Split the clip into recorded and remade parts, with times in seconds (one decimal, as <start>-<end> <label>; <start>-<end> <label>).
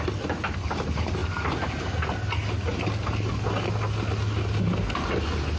0.0-5.6 recorded